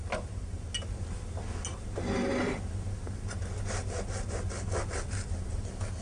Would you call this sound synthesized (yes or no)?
no